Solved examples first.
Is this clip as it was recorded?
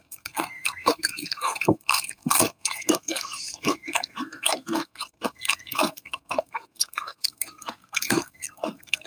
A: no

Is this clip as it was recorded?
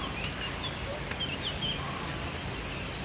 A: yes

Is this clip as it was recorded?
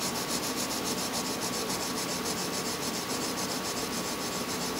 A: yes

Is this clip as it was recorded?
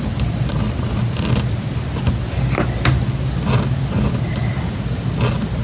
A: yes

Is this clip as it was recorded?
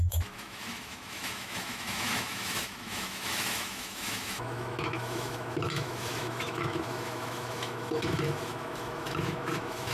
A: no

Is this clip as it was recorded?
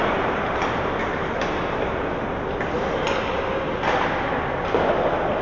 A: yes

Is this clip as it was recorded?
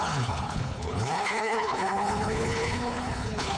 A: no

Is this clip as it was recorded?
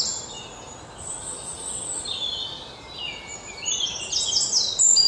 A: yes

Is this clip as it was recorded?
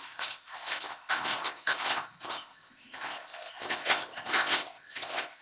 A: no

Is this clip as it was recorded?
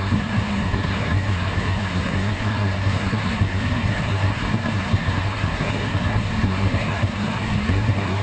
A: no